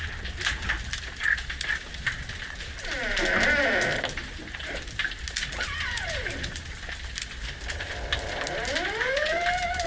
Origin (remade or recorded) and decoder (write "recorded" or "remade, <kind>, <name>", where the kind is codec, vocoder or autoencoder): recorded